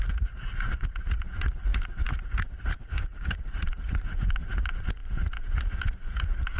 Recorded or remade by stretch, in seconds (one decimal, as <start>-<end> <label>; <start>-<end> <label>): 0.0-6.6 remade